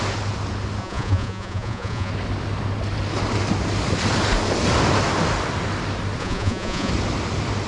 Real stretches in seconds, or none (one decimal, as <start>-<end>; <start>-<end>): 0.0-0.8; 2.1-6.2; 6.9-7.7